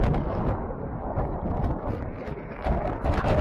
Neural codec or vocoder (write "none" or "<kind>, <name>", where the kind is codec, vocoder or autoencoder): none